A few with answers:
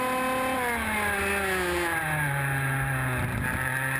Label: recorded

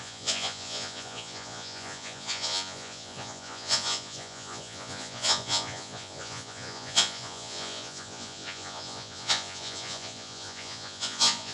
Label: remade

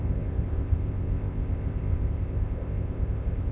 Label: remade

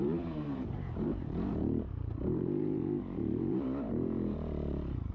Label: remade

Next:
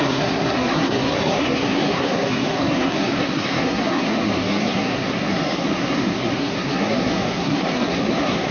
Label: remade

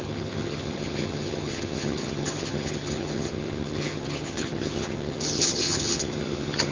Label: remade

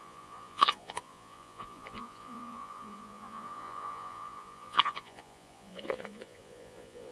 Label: remade